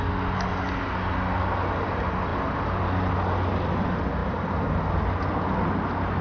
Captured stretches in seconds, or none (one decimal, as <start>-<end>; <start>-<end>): 0.0-6.2